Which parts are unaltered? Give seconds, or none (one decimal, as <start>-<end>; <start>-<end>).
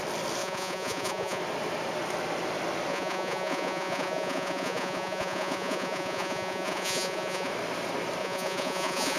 0.0-0.4; 1.4-2.9; 7.5-8.2